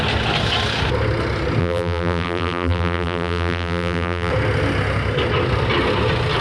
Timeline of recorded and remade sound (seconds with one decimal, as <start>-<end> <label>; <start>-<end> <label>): 0.0-1.6 recorded; 1.6-4.3 remade; 4.3-6.4 recorded